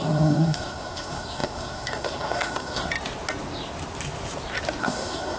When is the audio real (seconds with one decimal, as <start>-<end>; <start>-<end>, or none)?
2.9-4.8